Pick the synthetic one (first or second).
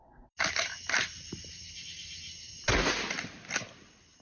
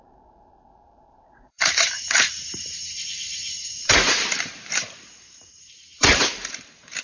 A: second